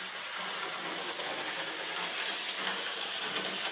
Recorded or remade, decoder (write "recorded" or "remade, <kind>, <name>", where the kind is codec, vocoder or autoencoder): recorded